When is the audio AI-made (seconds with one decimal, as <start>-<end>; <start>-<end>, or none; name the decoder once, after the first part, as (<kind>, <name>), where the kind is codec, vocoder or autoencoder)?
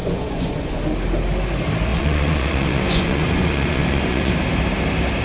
0.0-0.8 (vocoder, Vocos); 1.9-4.3